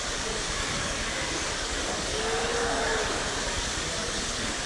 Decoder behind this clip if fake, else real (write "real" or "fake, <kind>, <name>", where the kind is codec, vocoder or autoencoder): fake, codec, DAC